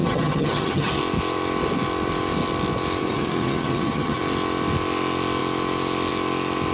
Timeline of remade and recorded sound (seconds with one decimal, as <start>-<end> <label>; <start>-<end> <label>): 0.0-1.0 remade; 1.0-3.0 recorded; 3.0-4.2 remade; 4.2-6.7 recorded